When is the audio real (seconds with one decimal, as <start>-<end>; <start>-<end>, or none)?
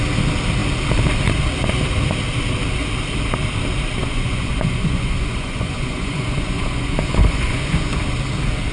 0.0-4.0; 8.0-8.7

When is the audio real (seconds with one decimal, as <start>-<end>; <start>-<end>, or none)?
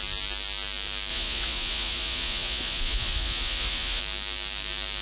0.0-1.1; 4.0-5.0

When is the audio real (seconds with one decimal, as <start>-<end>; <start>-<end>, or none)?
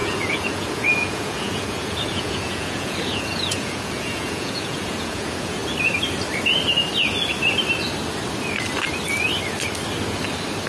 5.6-10.7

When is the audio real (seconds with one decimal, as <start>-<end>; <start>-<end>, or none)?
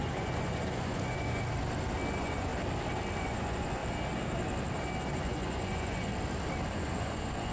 1.4-2.1; 2.5-3.2; 3.8-5.1; 6.1-6.7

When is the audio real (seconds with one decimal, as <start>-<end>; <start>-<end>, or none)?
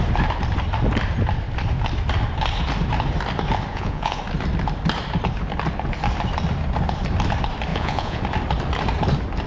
0.0-3.7; 4.2-7.7; 8.2-9.5